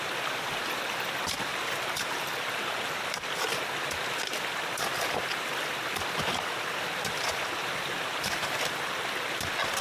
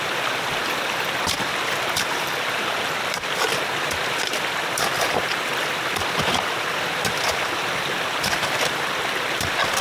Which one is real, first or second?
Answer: first